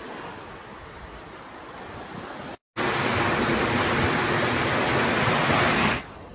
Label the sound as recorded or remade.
recorded